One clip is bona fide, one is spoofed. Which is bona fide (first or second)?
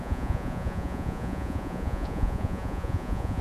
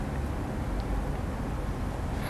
second